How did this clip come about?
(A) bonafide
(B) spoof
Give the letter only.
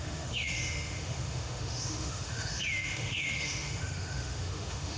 B